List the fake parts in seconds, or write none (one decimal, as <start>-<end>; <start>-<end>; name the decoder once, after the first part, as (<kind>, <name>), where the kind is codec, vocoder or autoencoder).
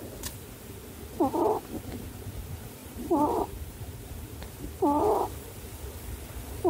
2.8-4.8 (vocoder, BigVGAN v2)